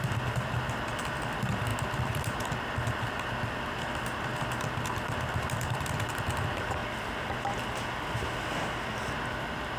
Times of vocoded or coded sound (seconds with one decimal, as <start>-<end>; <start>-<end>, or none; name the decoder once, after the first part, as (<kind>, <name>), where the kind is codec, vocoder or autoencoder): none